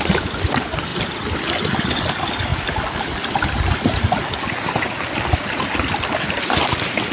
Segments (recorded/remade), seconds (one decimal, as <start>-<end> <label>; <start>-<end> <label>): 0.0-7.1 recorded